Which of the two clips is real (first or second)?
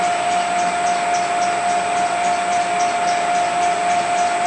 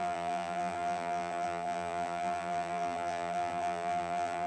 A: first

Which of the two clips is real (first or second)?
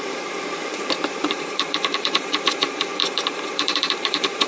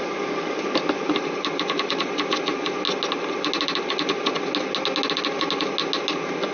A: second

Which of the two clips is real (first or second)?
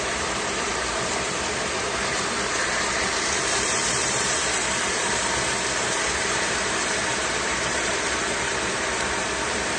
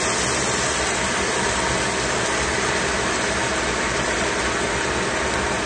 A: second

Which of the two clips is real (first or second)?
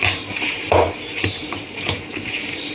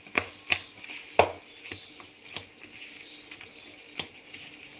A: second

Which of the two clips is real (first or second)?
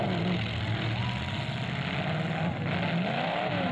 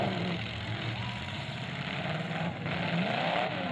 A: first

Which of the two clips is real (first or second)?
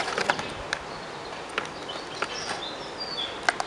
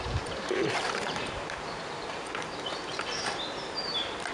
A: first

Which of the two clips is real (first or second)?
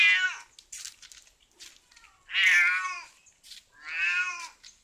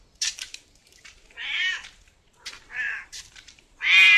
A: first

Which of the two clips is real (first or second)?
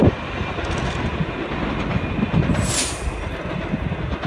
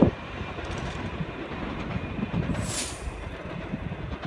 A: first